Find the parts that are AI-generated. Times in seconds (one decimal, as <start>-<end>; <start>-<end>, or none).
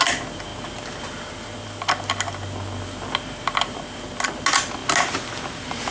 none